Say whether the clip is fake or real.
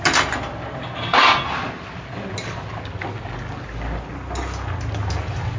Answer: real